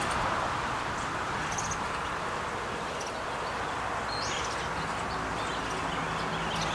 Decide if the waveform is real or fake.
real